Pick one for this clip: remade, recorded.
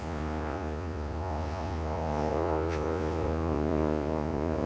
remade